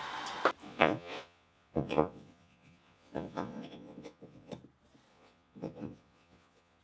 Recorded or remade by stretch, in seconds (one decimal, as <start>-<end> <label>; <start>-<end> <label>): 0.0-0.6 recorded; 0.6-4.5 remade; 4.5-5.1 recorded; 5.1-6.8 remade